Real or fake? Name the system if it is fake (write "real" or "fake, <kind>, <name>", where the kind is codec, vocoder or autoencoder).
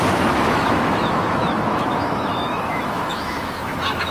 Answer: fake, autoencoder, DAC-VAE